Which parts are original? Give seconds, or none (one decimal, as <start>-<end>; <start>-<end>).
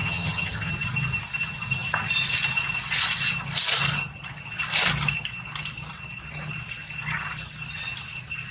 0.7-8.5